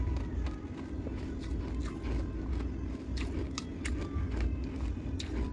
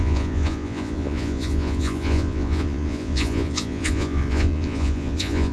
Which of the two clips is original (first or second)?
first